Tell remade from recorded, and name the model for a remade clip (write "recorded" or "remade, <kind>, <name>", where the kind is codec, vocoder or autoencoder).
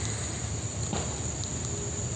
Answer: recorded